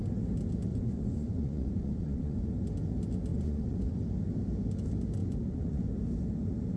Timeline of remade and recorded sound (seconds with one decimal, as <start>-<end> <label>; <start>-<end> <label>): 0.0-0.7 recorded; 0.7-2.5 remade; 2.5-3.3 recorded; 3.3-4.0 remade; 4.0-5.2 recorded; 5.2-5.8 remade; 5.8-6.8 recorded